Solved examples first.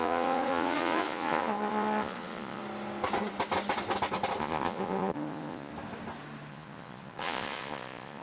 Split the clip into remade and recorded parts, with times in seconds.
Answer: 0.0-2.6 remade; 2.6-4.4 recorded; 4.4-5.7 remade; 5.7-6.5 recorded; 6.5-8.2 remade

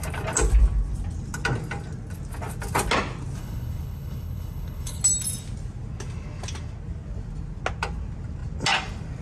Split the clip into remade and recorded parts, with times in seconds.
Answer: 0.0-3.4 recorded; 3.4-5.0 remade; 5.0-9.2 recorded

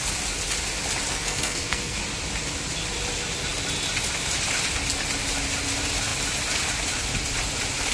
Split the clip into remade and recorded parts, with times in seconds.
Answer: 0.0-1.1 recorded; 1.1-2.0 remade; 2.0-7.9 recorded